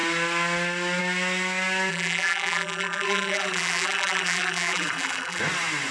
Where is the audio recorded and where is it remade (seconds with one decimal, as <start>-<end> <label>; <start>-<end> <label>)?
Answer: 0.0-1.9 recorded; 1.9-5.4 remade; 5.4-5.9 recorded